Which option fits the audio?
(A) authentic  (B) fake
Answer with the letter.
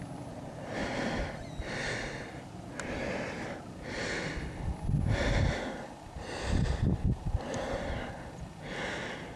A